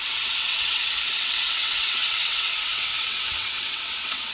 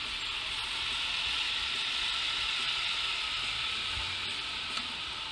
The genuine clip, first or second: second